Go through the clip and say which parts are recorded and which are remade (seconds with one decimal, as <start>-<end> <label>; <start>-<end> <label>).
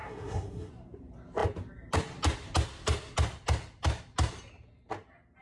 0.0-0.7 remade; 0.7-5.4 recorded